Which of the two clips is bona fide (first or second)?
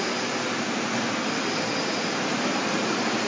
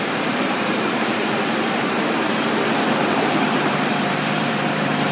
first